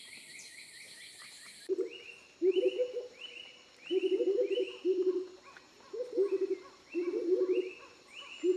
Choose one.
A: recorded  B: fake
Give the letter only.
A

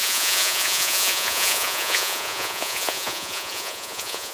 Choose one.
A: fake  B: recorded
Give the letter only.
A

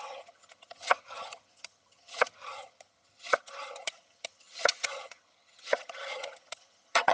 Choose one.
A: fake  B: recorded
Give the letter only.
A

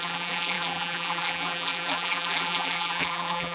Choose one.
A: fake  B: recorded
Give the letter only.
A